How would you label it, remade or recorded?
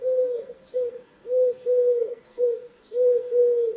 remade